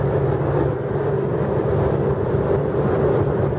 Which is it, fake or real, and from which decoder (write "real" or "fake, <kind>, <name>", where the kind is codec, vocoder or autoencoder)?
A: real